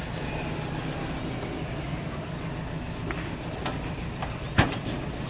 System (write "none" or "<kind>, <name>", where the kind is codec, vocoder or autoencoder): none